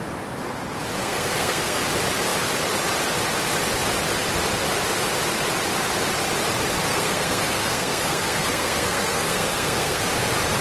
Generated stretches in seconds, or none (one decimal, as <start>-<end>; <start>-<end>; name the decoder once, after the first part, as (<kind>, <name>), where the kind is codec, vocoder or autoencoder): 1.0-1.8 (codec, SNAC); 6.9-10.0